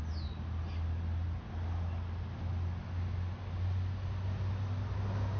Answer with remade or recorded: recorded